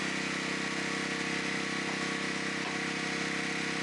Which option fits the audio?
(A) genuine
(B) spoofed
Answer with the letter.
A